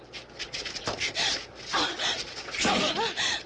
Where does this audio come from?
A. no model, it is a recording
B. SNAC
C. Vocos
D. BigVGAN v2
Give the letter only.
A